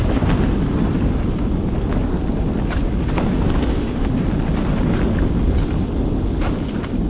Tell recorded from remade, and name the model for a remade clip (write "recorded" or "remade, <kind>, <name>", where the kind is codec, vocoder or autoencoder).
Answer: recorded